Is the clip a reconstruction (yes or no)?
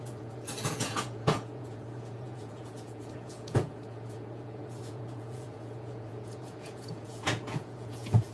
yes